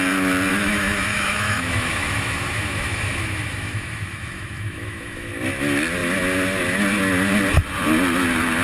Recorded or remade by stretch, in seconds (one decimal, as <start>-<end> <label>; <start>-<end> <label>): 0.0-0.5 recorded; 0.5-5.3 remade; 5.3-8.6 recorded